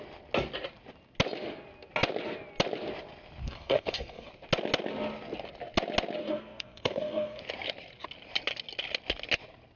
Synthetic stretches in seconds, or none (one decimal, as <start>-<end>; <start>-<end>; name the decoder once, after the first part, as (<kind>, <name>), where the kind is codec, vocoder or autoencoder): 3.4-4.3 (codec, SNAC); 6.2-7.4